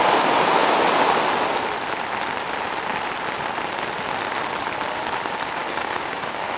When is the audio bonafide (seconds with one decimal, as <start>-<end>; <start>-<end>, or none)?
0.0-5.6